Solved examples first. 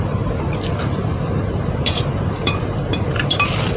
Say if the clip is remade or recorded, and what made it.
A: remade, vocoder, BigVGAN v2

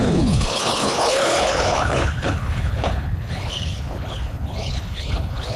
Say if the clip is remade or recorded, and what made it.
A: remade, codec, HILCodec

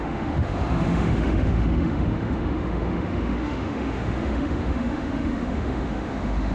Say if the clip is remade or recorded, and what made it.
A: remade, autoencoder, DAC-VAE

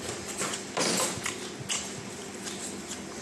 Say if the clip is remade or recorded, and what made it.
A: recorded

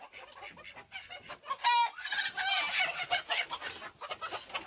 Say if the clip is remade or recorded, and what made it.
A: recorded